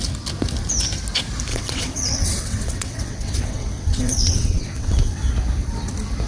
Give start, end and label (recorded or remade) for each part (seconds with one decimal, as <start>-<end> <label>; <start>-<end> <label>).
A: 0.0-1.5 recorded; 1.5-5.3 remade; 5.3-6.3 recorded